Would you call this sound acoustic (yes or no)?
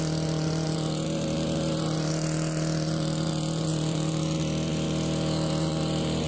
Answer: no